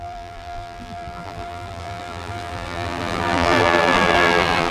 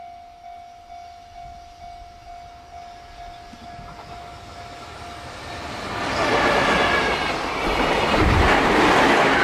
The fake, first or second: first